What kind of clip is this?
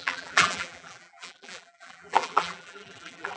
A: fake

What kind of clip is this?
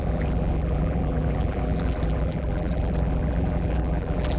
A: fake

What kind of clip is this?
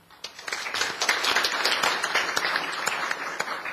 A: real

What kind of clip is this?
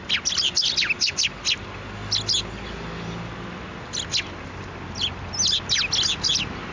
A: real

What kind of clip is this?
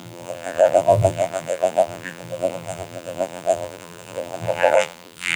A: fake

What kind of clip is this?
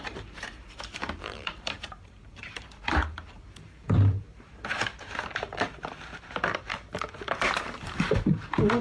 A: fake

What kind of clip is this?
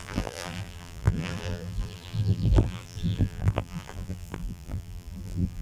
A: fake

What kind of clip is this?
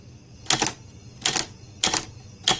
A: real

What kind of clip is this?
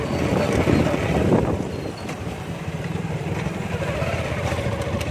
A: fake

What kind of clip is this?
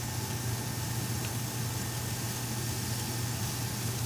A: real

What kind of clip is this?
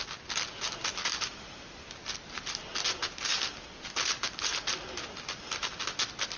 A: real